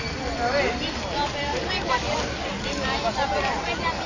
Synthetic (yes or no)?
no